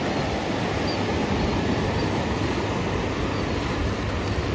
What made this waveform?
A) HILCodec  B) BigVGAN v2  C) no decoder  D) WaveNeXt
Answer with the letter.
C